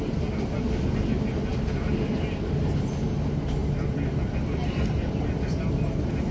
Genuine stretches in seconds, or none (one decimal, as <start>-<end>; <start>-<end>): 0.0-6.3